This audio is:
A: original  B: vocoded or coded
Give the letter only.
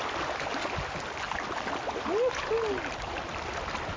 A